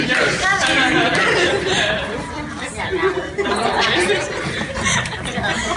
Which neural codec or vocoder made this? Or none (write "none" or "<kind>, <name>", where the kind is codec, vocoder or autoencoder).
none